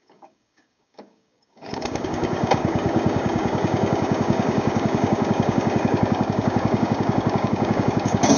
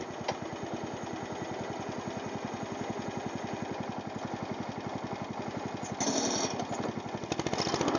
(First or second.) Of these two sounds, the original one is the second